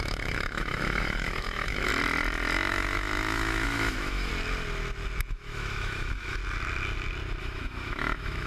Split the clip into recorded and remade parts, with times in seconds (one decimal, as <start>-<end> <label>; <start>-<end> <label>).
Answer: 0.0-1.9 remade; 1.9-2.7 recorded; 2.7-4.3 remade; 4.3-5.3 recorded; 5.3-6.4 remade; 6.4-7.4 recorded; 7.4-8.5 remade